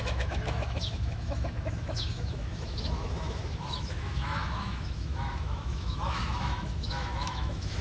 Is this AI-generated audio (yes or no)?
yes